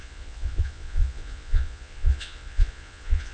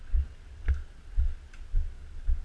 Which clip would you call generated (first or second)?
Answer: first